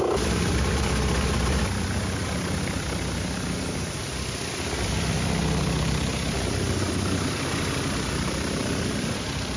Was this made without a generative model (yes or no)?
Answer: no